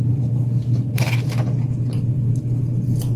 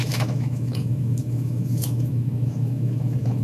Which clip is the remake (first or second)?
second